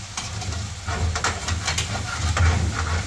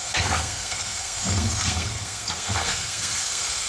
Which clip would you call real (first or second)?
first